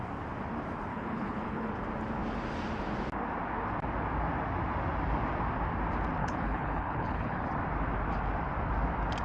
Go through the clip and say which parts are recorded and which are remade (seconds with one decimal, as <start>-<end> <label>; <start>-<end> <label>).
0.0-0.9 recorded; 0.9-1.7 remade; 1.7-6.2 recorded; 6.2-7.4 remade; 7.4-9.2 recorded